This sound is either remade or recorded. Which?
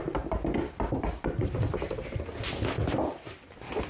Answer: recorded